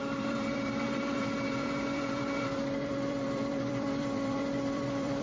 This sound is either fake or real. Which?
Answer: fake